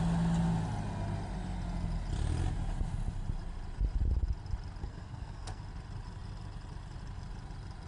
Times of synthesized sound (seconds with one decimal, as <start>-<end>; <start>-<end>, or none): 4.8-5.6